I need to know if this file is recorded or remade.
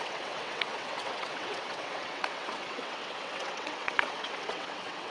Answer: remade